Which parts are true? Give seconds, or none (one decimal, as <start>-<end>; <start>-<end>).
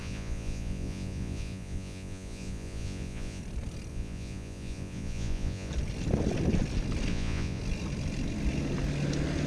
3.4-3.9; 5.7-7.1; 7.6-9.5